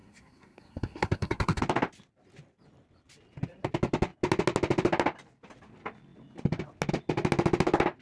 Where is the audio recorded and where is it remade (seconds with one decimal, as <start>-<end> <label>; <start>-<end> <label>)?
0.0-1.6 remade; 1.6-8.0 recorded